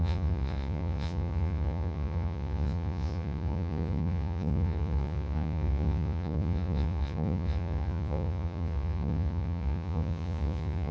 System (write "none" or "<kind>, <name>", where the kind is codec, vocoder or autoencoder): vocoder, Vocos